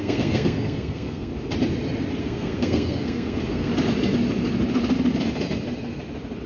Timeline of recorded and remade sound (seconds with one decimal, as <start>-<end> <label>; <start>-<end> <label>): 0.0-1.3 remade; 1.3-2.2 recorded; 2.2-3.7 remade; 3.7-6.5 recorded

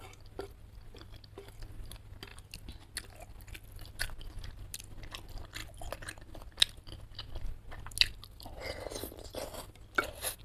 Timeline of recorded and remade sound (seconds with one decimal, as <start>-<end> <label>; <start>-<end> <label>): 0.0-10.4 recorded

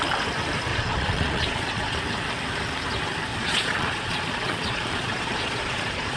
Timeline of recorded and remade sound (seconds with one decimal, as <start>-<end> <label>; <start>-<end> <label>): 0.0-0.7 recorded; 0.7-2.0 remade; 2.0-3.3 recorded; 3.3-6.2 remade

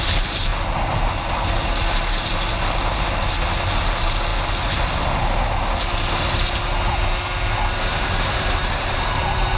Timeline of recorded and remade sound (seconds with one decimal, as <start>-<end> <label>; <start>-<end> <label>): 0.0-0.5 remade; 0.5-3.8 recorded; 3.8-4.3 remade; 4.3-7.7 recorded; 7.7-9.6 remade

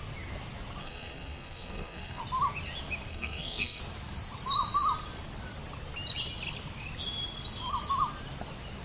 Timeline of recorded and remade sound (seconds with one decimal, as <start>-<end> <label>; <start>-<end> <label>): 0.0-0.8 recorded; 0.8-2.2 remade; 2.2-3.1 recorded; 3.1-3.8 remade; 3.8-8.8 recorded

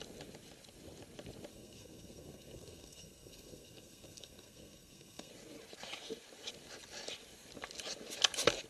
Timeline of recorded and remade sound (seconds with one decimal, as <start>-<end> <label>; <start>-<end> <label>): 0.0-1.5 recorded; 1.5-5.3 remade; 5.3-8.7 recorded

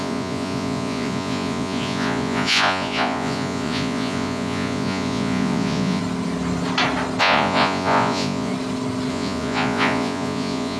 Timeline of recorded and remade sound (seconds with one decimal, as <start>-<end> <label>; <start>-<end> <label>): 0.0-6.0 remade; 6.0-7.2 recorded; 7.2-8.5 remade; 8.5-9.1 recorded; 9.1-10.8 remade